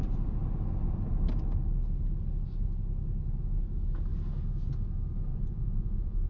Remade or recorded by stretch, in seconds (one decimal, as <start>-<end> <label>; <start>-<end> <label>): 0.0-5.3 recorded; 5.3-6.3 remade